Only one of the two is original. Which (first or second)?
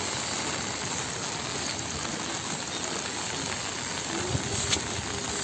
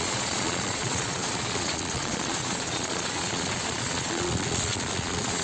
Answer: first